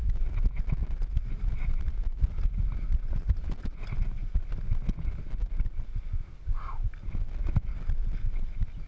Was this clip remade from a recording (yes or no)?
no